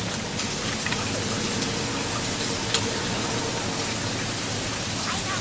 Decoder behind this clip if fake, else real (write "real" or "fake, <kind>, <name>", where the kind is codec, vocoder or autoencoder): real